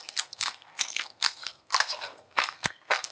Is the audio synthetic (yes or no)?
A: yes